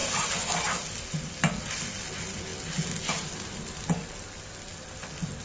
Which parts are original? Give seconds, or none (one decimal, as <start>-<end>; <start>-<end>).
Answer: 0.0-5.4